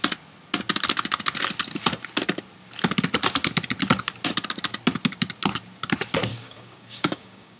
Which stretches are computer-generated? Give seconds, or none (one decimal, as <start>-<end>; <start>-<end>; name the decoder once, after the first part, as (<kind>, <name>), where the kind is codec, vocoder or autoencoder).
6.3-7.6 (codec, DAC)

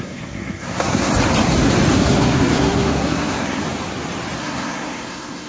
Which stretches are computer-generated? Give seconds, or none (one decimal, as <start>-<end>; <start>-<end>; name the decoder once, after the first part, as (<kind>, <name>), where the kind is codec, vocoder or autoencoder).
0.0-1.1 (codec, SNAC); 1.9-3.6; 4.4-5.5

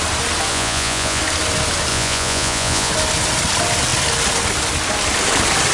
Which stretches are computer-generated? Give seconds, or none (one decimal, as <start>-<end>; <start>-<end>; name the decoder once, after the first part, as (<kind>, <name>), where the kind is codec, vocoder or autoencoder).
0.5-1.2 (vocoder, Vocos); 1.9-2.9

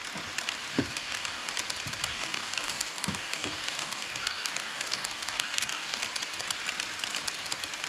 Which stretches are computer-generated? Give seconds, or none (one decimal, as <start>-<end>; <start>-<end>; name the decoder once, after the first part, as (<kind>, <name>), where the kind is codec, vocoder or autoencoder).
0.7-1.5 (codec, DAC); 2.1-6.0

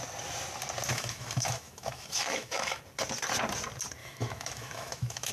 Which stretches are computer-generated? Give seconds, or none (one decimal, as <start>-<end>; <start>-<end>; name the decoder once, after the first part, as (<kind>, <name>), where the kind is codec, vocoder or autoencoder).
0.9-2.8 (autoencoder, DAC-VAE); 4.0-5.3